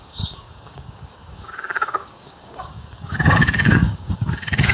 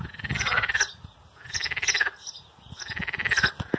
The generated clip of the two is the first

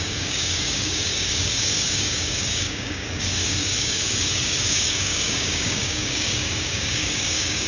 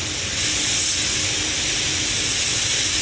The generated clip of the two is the first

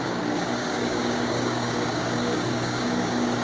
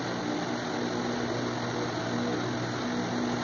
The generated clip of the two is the first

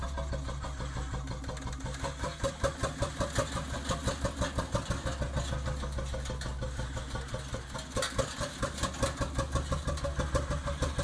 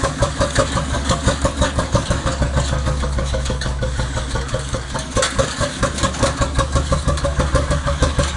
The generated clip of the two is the second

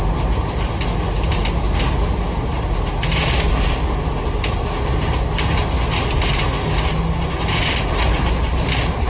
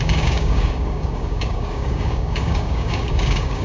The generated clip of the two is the second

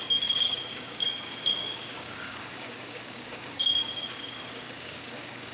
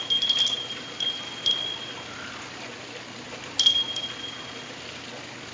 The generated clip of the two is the first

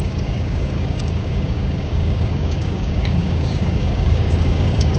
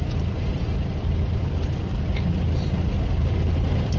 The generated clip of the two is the first